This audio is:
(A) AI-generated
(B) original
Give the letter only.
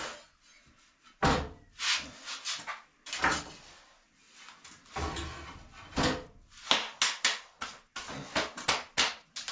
B